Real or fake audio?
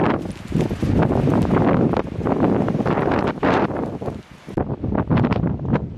real